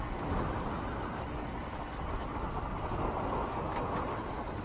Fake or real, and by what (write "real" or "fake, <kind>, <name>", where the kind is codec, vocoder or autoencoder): real